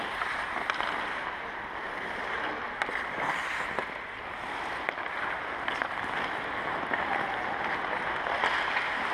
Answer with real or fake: real